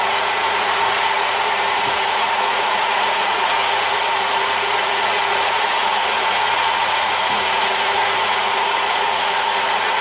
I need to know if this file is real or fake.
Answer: fake